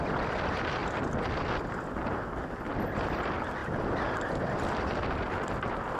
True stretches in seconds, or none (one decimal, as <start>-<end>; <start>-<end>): 0.0-6.0